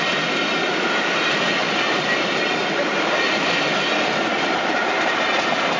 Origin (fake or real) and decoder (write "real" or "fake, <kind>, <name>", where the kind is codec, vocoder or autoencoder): real